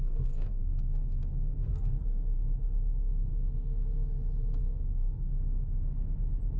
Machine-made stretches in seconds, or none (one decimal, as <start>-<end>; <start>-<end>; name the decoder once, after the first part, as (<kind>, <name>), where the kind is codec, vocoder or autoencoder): 0.0-3.3 (codec, SNAC); 4.6-5.3